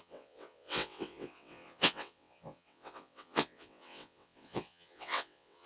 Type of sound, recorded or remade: remade